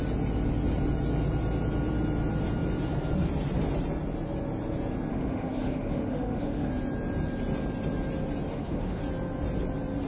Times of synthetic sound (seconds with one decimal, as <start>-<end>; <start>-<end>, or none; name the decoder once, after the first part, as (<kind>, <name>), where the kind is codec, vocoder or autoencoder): 5.1-6.7 (autoencoder, DAC-VAE); 8.5-9.0